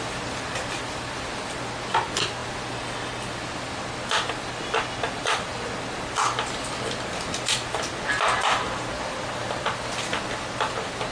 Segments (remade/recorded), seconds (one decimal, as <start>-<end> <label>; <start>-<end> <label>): 0.0-11.1 recorded